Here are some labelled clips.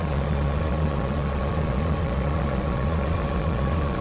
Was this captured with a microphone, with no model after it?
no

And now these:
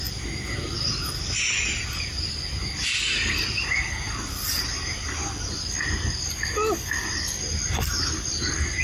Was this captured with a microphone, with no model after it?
yes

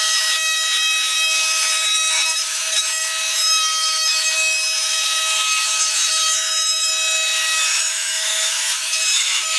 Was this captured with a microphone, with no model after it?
no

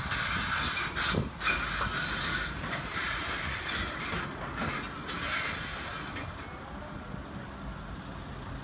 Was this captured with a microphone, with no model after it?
yes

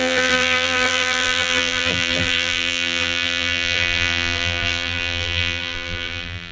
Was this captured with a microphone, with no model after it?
no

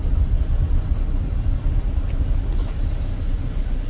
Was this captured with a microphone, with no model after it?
yes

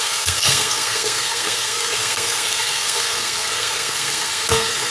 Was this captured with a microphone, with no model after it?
no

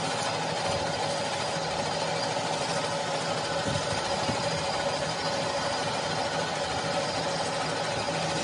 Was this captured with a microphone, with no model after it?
yes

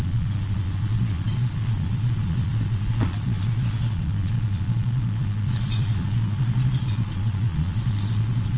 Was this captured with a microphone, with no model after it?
no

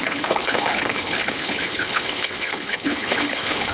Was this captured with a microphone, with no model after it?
no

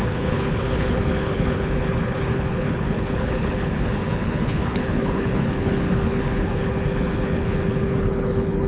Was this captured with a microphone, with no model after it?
no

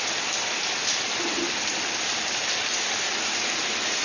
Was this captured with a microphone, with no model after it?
yes